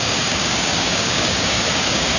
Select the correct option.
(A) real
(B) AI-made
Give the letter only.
B